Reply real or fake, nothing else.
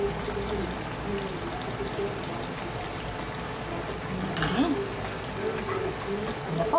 real